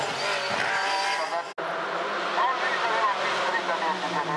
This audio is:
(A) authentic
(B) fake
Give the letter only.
A